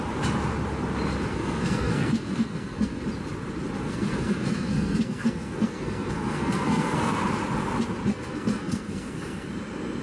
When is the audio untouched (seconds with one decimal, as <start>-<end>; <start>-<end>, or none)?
0.0-1.3; 3.0-3.8; 7.2-8.1; 9.5-10.0